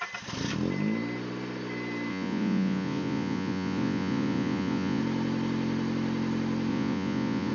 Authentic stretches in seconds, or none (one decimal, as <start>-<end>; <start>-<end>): 0.0-2.1; 5.0-6.7